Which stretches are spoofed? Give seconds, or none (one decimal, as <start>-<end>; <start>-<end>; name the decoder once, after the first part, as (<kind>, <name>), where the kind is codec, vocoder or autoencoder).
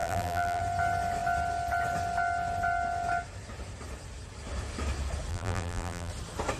0.0-0.6 (vocoder, BigVGAN v2); 5.3-6.1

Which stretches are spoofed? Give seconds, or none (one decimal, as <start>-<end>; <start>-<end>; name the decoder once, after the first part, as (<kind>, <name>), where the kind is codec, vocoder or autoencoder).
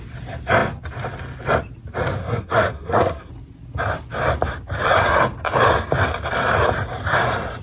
2.2-3.3 (codec, SNAC)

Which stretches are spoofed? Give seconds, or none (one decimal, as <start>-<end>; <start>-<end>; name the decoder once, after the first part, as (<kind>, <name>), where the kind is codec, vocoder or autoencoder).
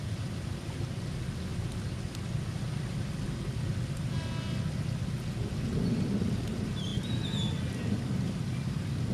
none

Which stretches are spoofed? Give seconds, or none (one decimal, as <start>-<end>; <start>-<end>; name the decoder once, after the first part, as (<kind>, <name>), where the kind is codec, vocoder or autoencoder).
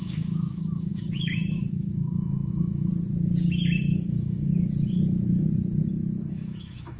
0.0-2.9 (autoencoder, DAC-VAE); 3.8-4.5; 6.3-7.0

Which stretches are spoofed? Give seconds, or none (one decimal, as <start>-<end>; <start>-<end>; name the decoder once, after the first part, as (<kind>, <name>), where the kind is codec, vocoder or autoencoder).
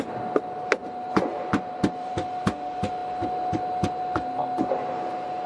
0.8-2.1 (vocoder, BigVGAN v2)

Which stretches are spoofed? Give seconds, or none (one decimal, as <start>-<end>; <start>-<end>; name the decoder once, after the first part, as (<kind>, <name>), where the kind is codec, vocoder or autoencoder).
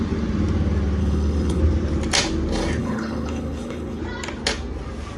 1.0-1.6 (codec, HILCodec); 2.8-4.0